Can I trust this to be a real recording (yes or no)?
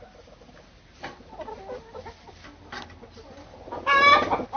yes